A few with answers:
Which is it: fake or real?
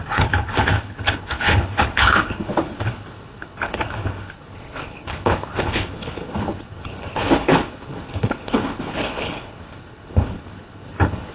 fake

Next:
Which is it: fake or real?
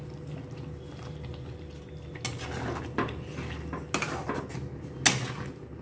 real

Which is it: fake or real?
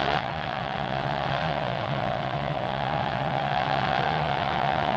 fake